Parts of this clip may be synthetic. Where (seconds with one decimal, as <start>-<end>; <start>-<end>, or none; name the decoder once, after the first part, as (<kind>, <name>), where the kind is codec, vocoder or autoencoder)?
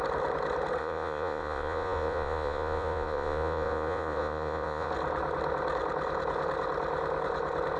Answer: 0.8-4.9 (vocoder, Vocos)